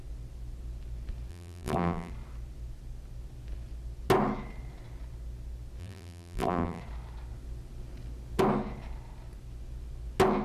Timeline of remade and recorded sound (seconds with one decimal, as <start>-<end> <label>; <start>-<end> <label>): 0.0-1.3 recorded; 1.3-2.1 remade; 2.1-5.8 recorded; 5.8-6.8 remade; 6.8-10.4 recorded

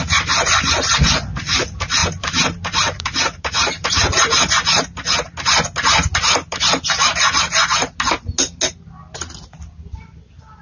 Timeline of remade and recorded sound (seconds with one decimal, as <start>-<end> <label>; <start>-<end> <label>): 0.0-2.0 recorded; 2.0-4.5 remade; 4.5-6.5 recorded; 6.5-7.1 remade; 7.1-10.6 recorded

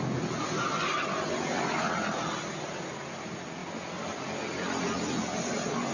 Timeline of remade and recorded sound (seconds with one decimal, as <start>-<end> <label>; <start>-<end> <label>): 0.0-5.9 recorded